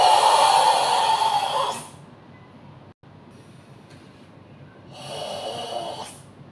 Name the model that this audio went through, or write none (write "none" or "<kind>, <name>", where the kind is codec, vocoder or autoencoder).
none